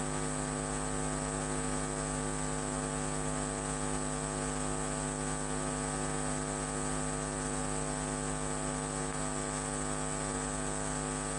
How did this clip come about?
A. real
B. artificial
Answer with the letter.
A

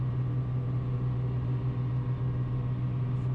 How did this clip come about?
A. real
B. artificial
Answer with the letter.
A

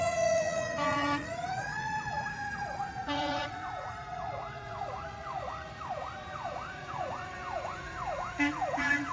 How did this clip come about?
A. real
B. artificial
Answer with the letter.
B